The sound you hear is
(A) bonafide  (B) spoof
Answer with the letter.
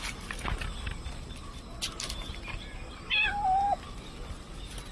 A